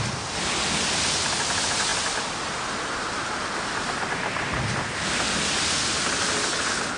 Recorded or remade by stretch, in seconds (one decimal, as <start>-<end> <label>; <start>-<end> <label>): 0.0-6.5 recorded; 6.5-7.0 remade

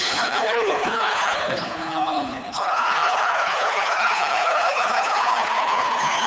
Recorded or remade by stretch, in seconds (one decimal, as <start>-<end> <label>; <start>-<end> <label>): 0.0-6.3 remade

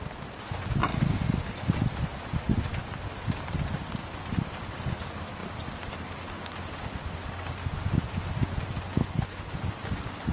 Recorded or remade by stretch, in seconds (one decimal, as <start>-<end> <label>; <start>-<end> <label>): 0.0-9.0 recorded; 9.0-9.5 remade; 9.5-10.3 recorded